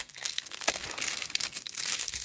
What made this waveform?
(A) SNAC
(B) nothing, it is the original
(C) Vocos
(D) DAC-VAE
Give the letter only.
A